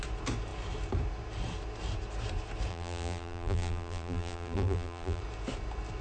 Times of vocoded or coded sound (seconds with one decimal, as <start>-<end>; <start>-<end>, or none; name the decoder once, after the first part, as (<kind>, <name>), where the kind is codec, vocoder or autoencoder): 2.7-5.2 (vocoder, BigVGAN v2)